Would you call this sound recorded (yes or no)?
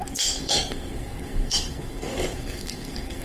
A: no